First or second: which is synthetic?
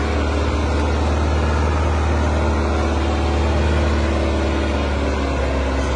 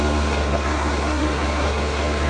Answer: second